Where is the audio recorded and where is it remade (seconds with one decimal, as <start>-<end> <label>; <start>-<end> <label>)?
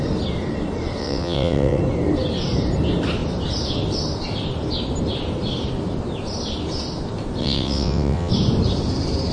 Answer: 0.0-1.0 recorded; 1.0-1.8 remade; 1.8-7.4 recorded; 7.4-8.3 remade; 8.3-9.3 recorded